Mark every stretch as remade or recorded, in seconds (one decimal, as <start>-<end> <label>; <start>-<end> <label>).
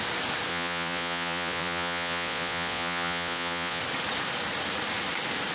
0.0-0.5 recorded; 0.5-3.8 remade; 3.8-5.5 recorded